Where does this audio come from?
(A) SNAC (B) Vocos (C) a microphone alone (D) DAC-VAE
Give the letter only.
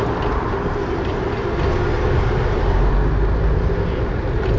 C